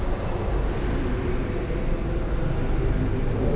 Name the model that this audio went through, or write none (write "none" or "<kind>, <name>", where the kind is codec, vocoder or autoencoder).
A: none